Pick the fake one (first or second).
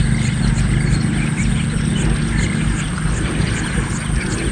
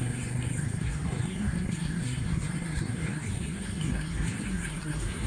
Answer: second